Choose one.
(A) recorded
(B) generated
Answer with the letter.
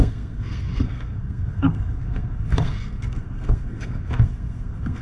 B